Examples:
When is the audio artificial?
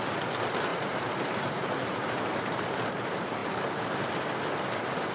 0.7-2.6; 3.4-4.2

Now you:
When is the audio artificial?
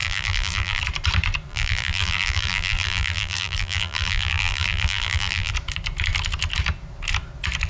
0.0-0.8; 1.5-5.5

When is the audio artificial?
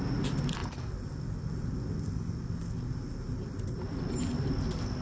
none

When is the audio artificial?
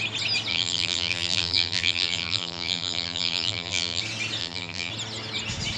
0.5-4.0; 4.4-4.9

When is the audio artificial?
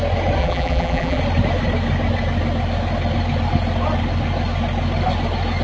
0.4-1.2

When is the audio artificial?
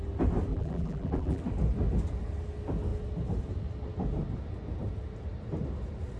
0.5-1.4